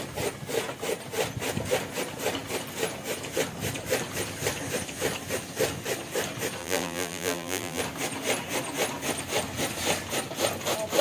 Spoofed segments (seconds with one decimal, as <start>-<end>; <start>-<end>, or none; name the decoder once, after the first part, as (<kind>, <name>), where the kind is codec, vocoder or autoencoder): 6.6-7.8 (vocoder, BigVGAN v2)